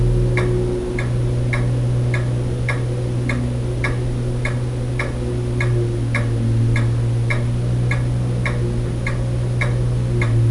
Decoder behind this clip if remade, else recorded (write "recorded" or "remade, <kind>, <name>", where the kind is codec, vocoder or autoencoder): recorded